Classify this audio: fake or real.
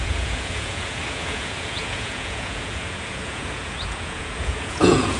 fake